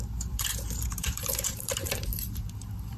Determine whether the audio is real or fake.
fake